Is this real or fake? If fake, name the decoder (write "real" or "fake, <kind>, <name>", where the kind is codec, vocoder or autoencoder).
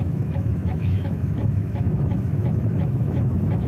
fake, autoencoder, DAC-VAE